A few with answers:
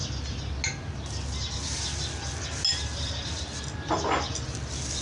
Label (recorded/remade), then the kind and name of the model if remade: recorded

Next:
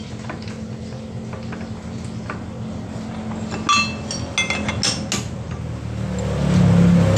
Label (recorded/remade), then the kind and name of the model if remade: recorded